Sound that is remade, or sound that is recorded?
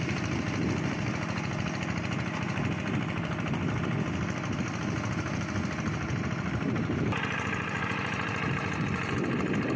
remade